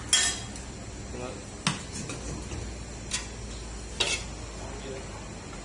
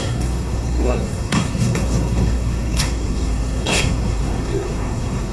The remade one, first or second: second